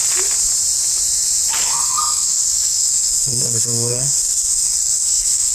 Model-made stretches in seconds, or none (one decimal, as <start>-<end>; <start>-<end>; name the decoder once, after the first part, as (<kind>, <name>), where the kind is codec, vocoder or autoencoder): 1.6-5.5 (codec, SNAC)